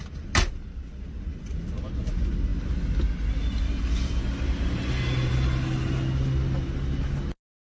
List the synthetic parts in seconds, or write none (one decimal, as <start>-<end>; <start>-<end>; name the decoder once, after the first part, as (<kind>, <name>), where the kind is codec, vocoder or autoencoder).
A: none